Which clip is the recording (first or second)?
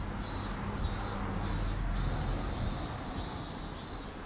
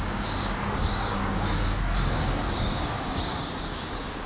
first